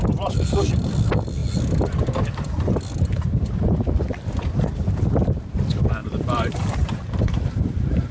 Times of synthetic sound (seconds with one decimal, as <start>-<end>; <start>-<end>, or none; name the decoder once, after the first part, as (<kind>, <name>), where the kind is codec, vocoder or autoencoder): 6.0-8.1 (vocoder, BigVGAN v2)